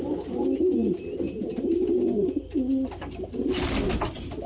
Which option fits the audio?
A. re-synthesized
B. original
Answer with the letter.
B